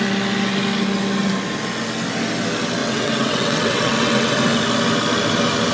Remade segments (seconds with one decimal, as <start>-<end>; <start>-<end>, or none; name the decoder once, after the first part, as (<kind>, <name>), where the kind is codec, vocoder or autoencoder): 2.8-4.6 (vocoder, WaveNeXt)